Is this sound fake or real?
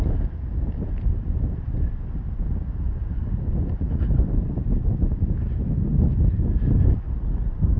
real